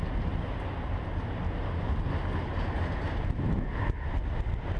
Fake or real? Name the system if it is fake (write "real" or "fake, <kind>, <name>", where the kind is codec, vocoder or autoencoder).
real